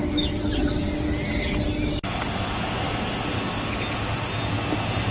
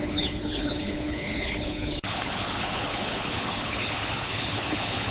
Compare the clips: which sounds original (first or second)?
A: first